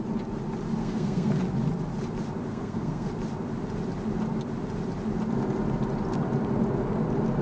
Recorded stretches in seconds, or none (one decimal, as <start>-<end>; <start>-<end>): 0.0-0.8; 1.3-2.5; 3.1-7.4